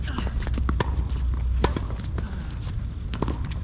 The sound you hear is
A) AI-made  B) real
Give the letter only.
B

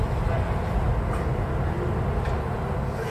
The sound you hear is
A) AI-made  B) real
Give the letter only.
B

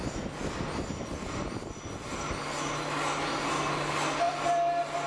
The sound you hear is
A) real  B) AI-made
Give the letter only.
A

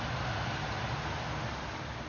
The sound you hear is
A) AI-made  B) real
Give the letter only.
B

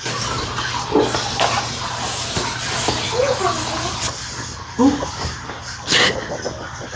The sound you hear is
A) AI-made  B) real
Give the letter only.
B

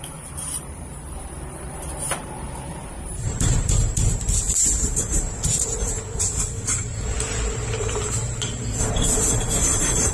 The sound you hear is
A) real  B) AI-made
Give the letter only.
B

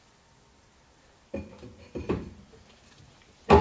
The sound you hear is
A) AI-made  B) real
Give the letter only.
B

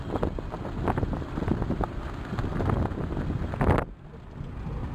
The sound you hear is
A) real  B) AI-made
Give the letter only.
A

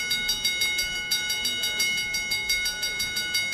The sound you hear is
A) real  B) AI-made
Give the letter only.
A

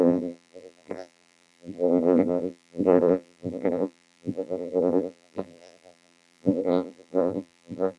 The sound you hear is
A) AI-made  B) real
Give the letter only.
A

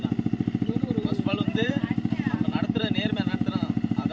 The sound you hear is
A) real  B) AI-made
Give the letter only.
B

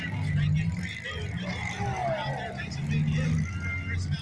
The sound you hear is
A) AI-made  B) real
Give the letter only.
B